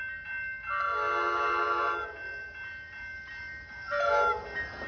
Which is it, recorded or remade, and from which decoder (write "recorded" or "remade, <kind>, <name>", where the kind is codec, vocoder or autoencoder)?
recorded